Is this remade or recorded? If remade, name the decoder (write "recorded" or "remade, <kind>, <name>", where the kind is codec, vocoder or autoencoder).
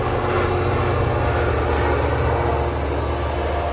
recorded